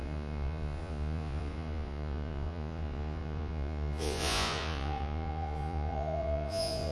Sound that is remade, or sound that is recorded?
remade